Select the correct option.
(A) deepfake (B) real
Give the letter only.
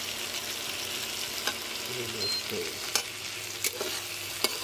B